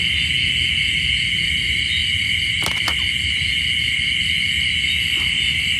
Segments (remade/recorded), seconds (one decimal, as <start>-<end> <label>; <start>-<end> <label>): 0.0-5.8 recorded